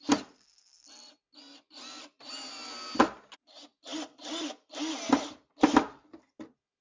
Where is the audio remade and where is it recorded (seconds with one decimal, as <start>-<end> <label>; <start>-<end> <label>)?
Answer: 0.0-6.8 recorded